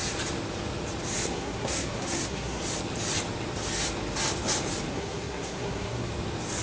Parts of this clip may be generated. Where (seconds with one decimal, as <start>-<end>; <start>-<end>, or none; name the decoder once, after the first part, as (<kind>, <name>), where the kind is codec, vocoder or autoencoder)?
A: 1.3-2.6 (codec, SNAC); 4.9-6.1